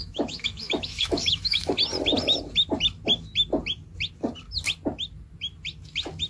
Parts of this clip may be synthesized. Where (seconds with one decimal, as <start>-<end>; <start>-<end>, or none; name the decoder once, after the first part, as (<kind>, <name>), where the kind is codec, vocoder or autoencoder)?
0.0-1.7 (autoencoder, DAC-VAE)